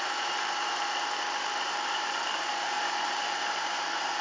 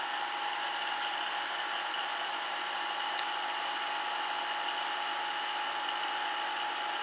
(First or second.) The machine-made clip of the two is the first